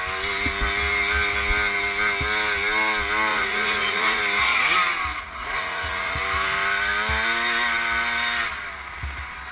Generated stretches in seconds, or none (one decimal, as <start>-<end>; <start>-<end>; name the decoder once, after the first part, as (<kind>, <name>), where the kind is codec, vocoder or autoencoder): 3.3-4.2 (vocoder, Vocos); 5.1-6.2